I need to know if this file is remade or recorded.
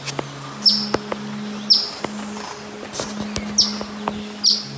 recorded